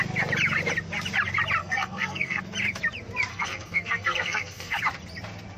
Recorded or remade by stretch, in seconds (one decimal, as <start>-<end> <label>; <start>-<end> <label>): 0.0-1.6 recorded; 1.6-2.4 remade; 2.4-3.3 recorded; 3.3-4.8 remade; 4.8-5.6 recorded